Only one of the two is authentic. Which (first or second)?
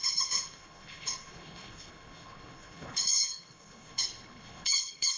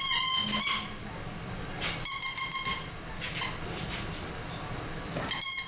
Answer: second